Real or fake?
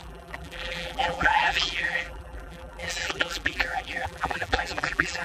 fake